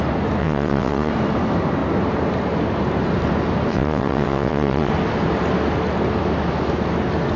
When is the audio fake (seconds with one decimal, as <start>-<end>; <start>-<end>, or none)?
0.4-1.1; 3.7-4.9